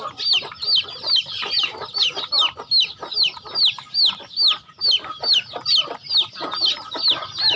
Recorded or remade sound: recorded